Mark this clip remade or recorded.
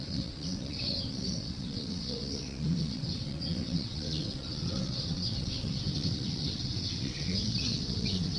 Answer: remade